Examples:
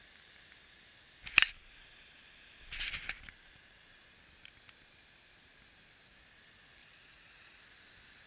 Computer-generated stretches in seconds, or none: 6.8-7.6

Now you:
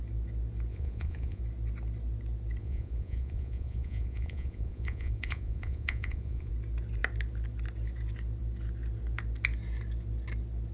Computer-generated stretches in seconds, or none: 0.7-1.4; 2.6-6.5

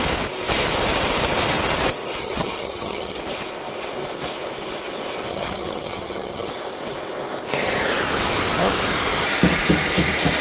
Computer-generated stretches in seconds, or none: 2.2-3.2; 5.3-6.5

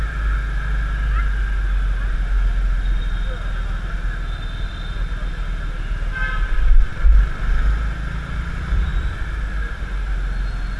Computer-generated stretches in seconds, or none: none

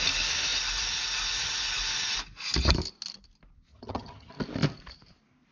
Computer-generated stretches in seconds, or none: 3.7-4.3

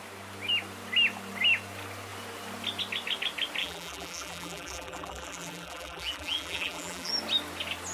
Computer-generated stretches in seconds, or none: 3.6-7.1